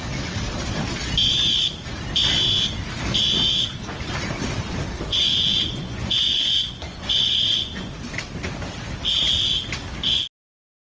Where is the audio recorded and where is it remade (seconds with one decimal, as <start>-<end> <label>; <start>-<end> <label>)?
0.0-5.1 recorded; 5.1-7.9 remade; 7.9-10.9 recorded